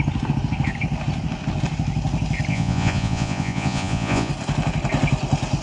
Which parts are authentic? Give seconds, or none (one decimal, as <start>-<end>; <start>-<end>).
0.0-2.5; 4.3-5.6